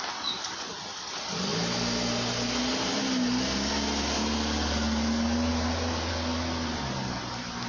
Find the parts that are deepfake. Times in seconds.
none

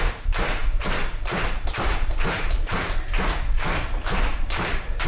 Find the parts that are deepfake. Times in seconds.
none

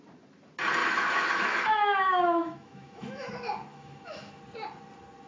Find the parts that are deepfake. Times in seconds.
0.8-3.3 (autoencoder, DAC-VAE); 3.7-4.4

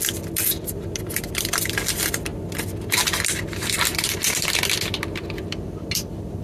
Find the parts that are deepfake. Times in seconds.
none

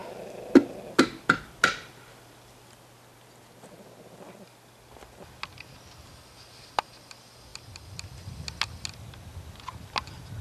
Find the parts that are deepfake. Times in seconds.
none